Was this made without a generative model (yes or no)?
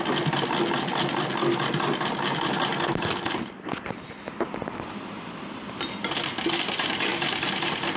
yes